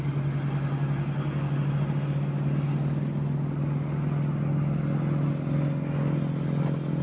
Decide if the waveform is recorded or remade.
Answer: recorded